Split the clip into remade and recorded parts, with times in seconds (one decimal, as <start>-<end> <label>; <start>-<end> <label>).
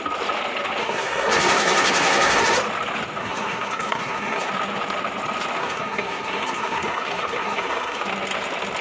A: 0.0-0.8 recorded; 0.8-2.4 remade; 2.4-3.2 recorded; 3.2-4.5 remade; 4.5-5.6 recorded; 5.6-8.0 remade; 8.0-8.8 recorded